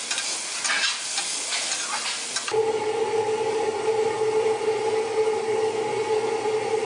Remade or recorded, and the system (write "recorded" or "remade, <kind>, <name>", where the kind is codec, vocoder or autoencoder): recorded